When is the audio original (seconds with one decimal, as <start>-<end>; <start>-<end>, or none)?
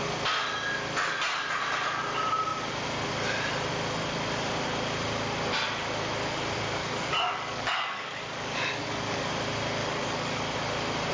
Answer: 0.0-6.8; 9.3-9.8; 10.4-11.1